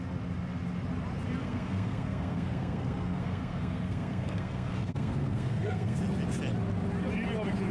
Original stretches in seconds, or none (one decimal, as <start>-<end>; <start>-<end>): 0.0-1.4; 6.0-7.7